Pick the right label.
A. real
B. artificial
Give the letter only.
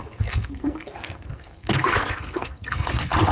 B